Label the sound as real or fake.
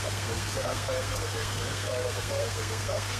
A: fake